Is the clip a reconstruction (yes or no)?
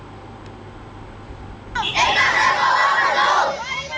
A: no